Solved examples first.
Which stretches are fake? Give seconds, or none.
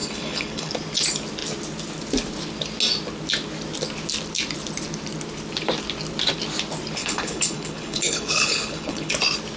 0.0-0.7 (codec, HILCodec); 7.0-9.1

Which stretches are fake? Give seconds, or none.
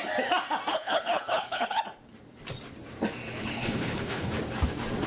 0.7-1.8 (codec, HILCodec); 3.4-4.3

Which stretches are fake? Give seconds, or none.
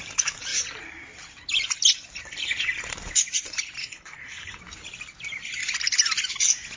3.8-4.6 (codec, HILCodec)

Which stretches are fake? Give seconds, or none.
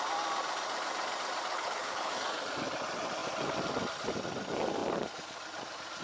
1.5-2.1 (codec, HILCodec)